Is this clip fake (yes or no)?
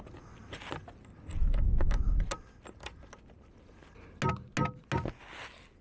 no